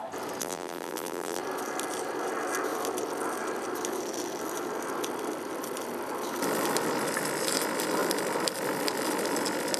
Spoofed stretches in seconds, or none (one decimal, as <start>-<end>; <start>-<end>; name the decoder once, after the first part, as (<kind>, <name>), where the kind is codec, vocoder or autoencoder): 0.4-1.4 (vocoder, BigVGAN v2)